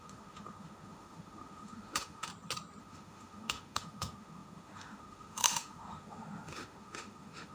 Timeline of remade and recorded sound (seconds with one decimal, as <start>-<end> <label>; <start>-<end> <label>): 0.0-2.3 remade; 2.3-2.8 recorded; 2.8-7.5 remade